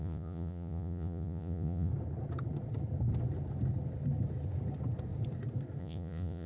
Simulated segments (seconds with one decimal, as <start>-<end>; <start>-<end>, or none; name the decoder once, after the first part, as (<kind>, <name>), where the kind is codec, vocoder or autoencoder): 0.0-1.9 (vocoder, Vocos); 5.8-6.5